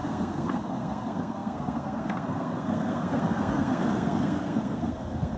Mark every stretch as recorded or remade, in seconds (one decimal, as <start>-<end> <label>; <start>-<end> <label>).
0.0-5.4 remade